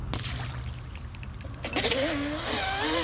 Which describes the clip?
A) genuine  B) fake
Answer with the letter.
A